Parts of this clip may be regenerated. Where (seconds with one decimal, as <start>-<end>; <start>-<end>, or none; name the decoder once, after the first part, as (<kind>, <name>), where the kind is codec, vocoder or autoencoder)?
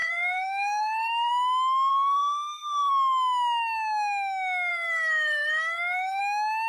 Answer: 0.0-1.3 (codec, SNAC); 1.9-2.9; 4.7-6.2